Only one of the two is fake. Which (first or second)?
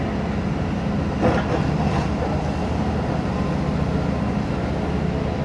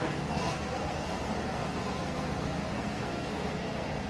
second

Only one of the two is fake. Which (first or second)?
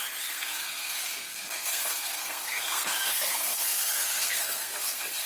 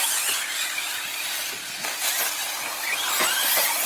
first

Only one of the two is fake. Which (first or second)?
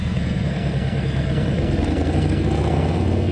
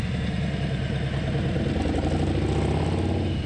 first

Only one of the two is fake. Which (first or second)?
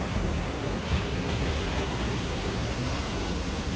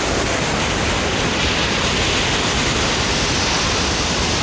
first